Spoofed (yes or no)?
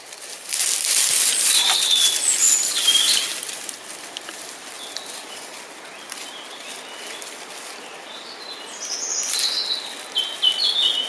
no